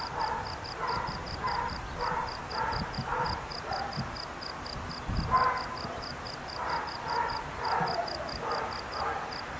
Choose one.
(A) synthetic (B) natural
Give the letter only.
B